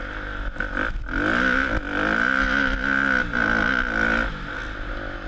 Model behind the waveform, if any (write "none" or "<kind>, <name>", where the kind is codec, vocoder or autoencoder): none